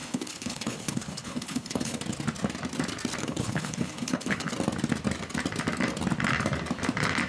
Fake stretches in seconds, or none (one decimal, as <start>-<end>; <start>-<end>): 0.0-2.0; 3.2-4.5